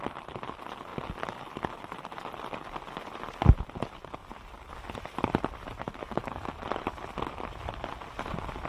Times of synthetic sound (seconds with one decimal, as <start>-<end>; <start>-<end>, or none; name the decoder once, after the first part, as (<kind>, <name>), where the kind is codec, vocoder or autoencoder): 6.0-6.6 (codec, DAC)